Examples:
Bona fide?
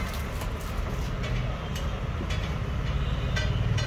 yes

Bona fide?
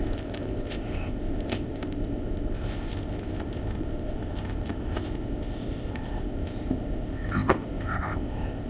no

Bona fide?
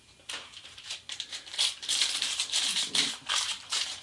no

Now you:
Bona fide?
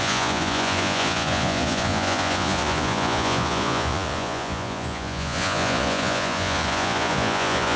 no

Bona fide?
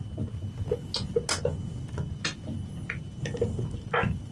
yes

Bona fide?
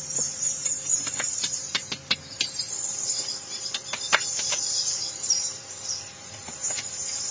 no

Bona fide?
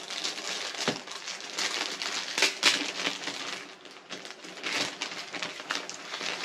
yes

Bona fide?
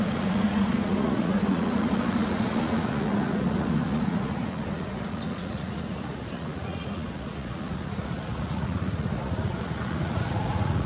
no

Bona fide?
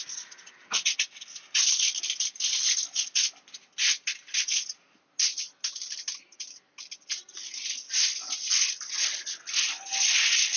yes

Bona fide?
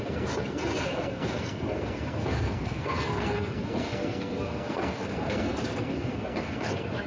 no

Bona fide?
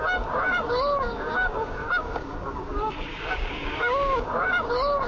no